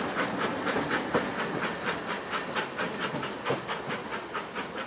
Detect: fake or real real